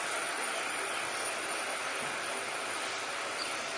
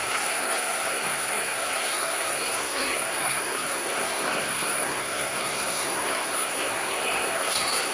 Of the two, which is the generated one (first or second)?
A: second